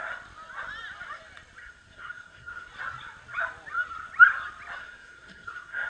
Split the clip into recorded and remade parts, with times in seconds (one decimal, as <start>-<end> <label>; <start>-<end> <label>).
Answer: 0.0-1.6 recorded; 1.6-2.7 remade; 2.7-4.8 recorded; 4.8-5.9 remade